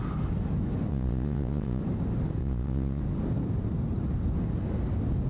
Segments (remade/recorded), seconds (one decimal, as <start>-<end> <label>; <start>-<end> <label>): 0.0-0.9 recorded; 0.9-1.8 remade; 1.8-2.4 recorded; 2.4-3.0 remade; 3.0-5.3 recorded